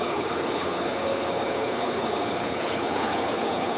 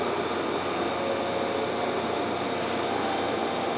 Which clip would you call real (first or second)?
second